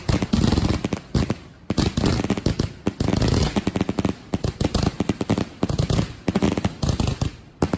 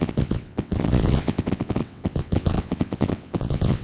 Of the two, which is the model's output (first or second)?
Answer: second